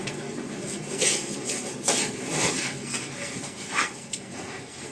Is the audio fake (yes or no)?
yes